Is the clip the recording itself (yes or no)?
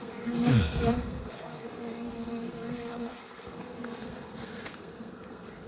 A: no